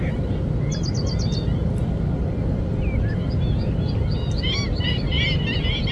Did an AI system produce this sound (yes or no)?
no